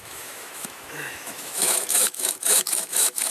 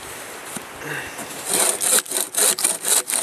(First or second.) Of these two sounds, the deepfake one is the first